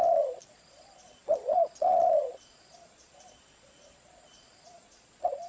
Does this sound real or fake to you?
fake